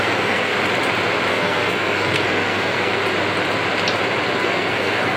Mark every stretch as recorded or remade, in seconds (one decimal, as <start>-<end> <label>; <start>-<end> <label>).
0.0-0.5 remade; 0.5-1.3 recorded; 1.3-3.0 remade; 3.0-4.4 recorded; 4.4-5.2 remade